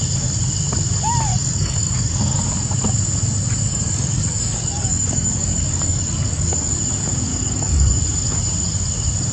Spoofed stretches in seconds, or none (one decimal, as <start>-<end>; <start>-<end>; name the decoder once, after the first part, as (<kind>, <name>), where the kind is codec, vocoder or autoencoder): 1.3-2.4 (codec, DAC); 3.7-6.7; 7.3-8.0